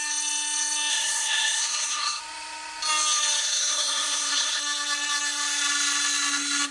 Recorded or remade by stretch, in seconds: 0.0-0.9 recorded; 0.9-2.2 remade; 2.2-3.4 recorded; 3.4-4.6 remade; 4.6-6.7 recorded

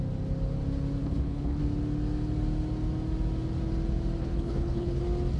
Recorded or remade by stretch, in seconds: 0.0-1.0 recorded; 1.0-1.6 remade; 1.6-4.2 recorded; 4.2-5.0 remade; 5.0-5.4 recorded

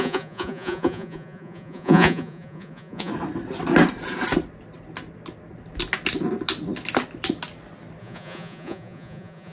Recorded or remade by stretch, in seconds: 0.0-3.1 remade; 3.1-8.0 recorded; 8.0-9.5 remade

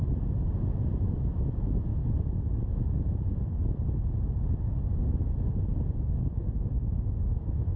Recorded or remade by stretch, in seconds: 0.0-1.0 recorded; 1.0-1.9 remade; 1.9-6.1 recorded; 6.1-7.8 remade

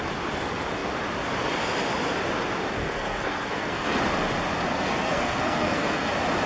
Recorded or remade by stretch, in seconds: 0.0-2.8 recorded; 2.8-4.0 remade; 4.0-4.7 recorded; 4.7-6.1 remade; 6.1-6.5 recorded

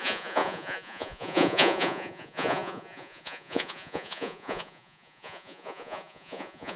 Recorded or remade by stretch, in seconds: 0.0-6.8 remade

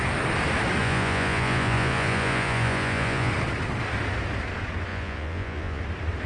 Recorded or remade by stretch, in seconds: 0.0-0.8 recorded; 0.8-3.3 remade; 3.3-4.9 recorded; 4.9-5.8 remade; 5.8-6.3 recorded

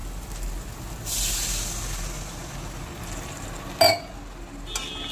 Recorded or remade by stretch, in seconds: 0.0-5.1 recorded